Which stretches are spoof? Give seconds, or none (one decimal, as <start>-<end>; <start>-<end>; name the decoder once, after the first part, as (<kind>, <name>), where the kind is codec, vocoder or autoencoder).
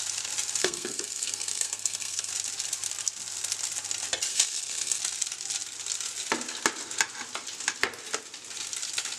0.6-2.3 (codec, SNAC); 4.3-5.0